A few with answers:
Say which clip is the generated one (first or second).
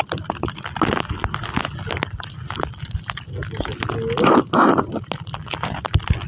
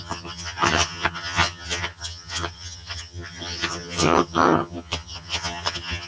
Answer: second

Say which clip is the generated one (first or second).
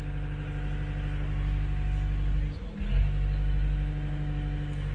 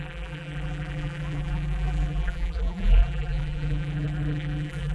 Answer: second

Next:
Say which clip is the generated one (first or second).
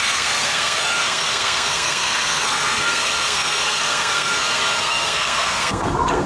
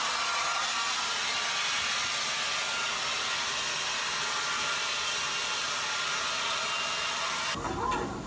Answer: first